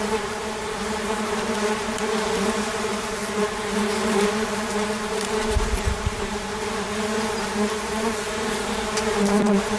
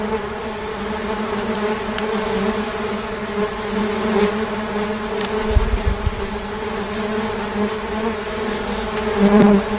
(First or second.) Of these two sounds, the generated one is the first